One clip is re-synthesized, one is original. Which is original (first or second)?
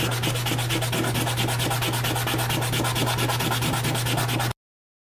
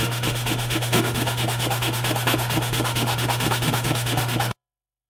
first